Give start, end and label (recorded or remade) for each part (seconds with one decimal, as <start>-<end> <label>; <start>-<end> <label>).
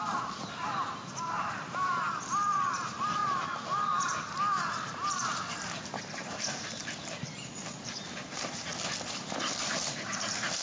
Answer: 0.0-3.2 remade; 3.2-4.6 recorded; 4.6-8.7 remade; 8.7-9.6 recorded; 9.6-10.6 remade